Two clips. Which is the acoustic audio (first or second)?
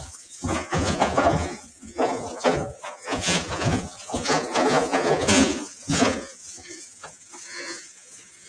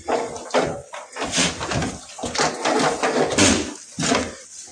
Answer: second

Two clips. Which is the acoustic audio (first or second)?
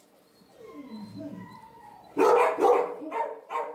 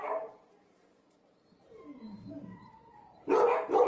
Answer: first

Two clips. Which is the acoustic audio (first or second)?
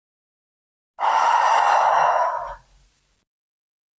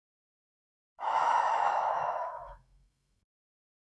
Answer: first